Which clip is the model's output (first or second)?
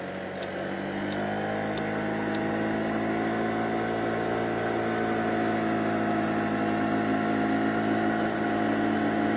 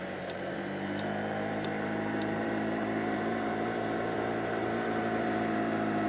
second